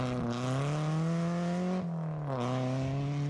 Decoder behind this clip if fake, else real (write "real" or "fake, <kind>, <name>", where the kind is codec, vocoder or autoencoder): real